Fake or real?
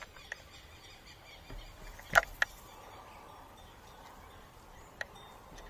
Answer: real